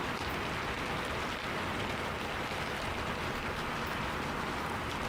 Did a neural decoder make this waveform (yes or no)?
no